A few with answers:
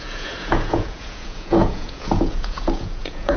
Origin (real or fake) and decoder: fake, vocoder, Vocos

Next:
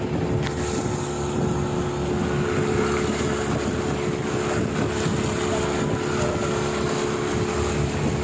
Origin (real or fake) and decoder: real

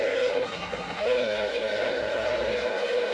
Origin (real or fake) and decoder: fake, codec, SNAC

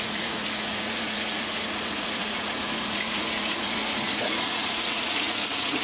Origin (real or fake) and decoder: fake, vocoder, Vocos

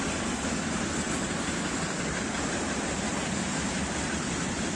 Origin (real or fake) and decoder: real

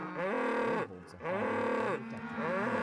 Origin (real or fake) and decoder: real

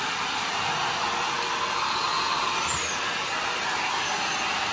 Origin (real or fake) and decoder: real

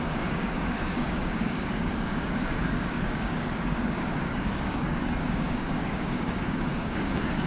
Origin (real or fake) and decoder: fake, codec, DAC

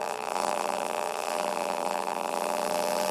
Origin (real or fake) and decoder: fake, vocoder, BigVGAN v2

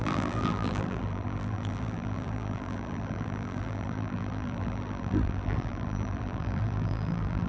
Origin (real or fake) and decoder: fake, vocoder, BigVGAN v2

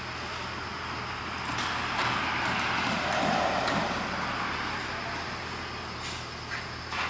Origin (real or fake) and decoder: real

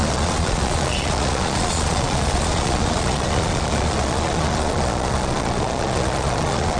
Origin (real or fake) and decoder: fake, vocoder, Vocos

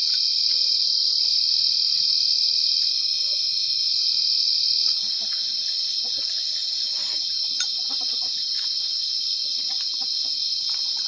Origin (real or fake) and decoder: real